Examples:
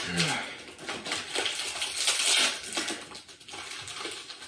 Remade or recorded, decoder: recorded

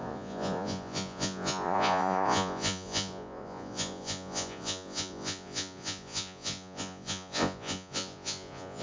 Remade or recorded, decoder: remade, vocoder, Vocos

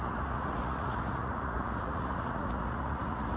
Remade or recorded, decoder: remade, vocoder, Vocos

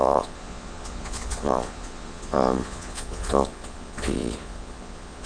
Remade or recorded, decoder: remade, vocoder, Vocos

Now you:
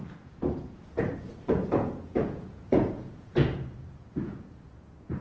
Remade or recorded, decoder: remade, vocoder, Vocos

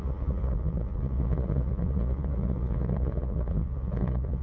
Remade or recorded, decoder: remade, vocoder, Vocos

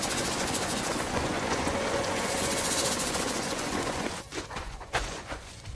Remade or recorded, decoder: remade, vocoder, Vocos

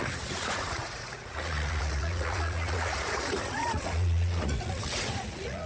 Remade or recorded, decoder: remade, vocoder, Vocos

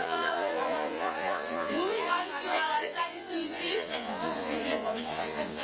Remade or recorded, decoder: remade, vocoder, Vocos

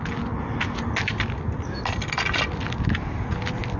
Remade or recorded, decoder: recorded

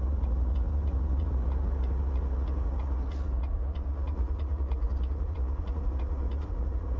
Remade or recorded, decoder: remade, vocoder, Vocos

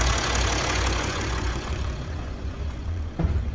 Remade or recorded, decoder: remade, vocoder, Vocos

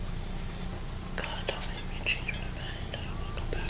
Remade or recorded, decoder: recorded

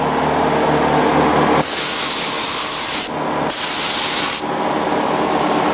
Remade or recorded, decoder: recorded